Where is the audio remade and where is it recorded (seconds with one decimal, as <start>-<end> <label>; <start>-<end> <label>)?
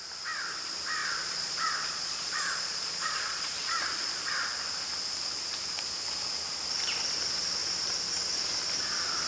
0.0-1.0 recorded; 1.0-4.3 remade; 4.3-9.3 recorded